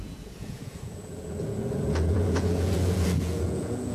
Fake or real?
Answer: fake